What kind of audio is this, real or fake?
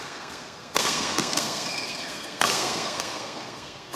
fake